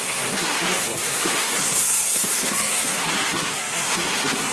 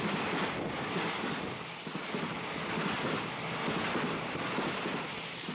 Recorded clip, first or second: second